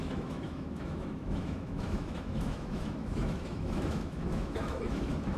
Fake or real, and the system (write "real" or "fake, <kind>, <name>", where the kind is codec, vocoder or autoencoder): fake, autoencoder, DAC-VAE